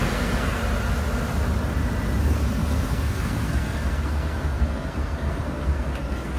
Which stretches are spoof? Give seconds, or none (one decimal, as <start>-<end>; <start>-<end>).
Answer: 0.0-0.6; 2.2-6.4

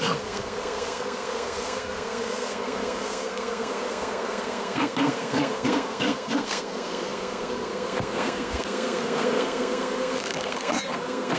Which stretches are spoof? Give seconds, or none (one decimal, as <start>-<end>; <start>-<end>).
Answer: 0.0-11.4